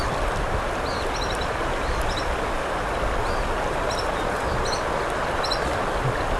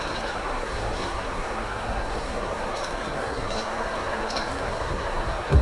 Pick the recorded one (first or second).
first